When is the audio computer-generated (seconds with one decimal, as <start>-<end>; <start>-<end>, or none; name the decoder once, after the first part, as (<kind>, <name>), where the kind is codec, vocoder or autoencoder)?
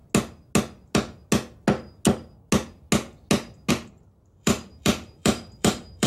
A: 3.7-6.1 (vocoder, BigVGAN v2)